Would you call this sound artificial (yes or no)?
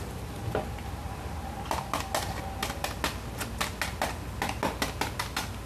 no